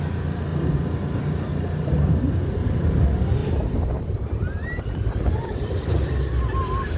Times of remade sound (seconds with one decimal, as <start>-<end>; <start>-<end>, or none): 0.5-2.7; 3.4-4.8